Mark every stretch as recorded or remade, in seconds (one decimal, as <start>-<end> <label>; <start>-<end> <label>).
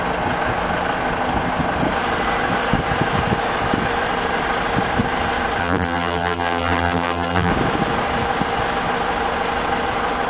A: 0.0-5.6 recorded; 5.6-7.5 remade; 7.5-10.3 recorded